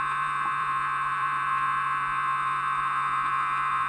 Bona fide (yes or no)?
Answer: no